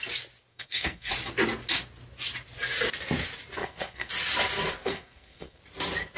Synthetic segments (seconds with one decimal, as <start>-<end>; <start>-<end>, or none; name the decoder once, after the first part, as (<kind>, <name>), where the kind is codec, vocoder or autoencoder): 0.5-1.1 (codec, SNAC); 3.6-4.1; 4.8-5.6